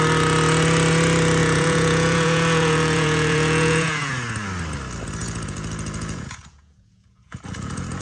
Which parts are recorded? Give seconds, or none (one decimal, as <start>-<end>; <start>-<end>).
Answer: 0.0-1.4; 4.1-5.2